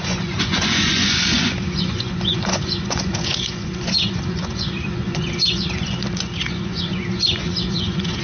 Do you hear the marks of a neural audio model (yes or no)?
yes